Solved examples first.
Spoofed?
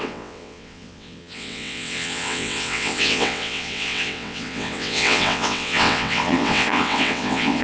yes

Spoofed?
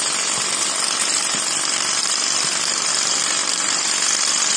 no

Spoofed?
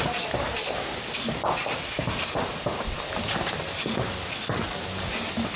no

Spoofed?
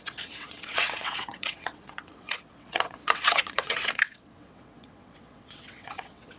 yes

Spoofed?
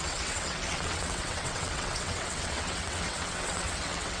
yes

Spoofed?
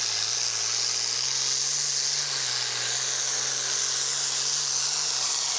no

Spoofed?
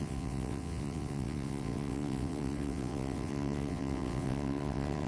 yes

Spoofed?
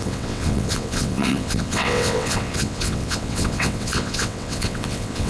yes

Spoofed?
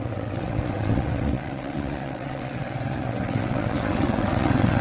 yes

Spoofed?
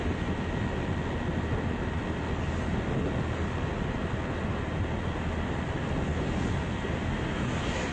no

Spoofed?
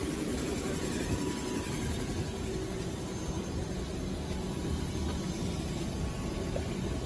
no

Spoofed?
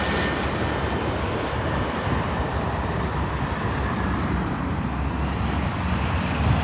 no